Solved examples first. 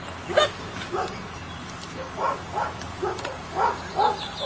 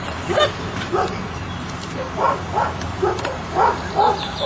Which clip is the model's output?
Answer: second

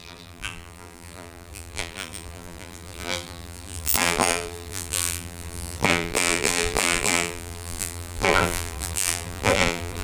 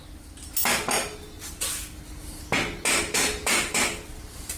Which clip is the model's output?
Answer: first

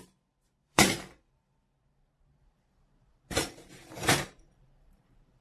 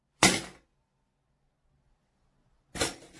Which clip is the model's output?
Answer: first